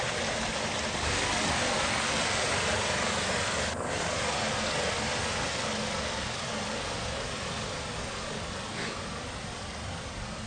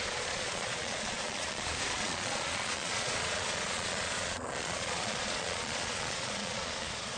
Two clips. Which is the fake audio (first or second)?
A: second